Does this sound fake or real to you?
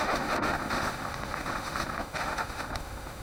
fake